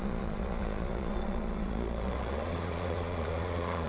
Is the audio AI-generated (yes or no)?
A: yes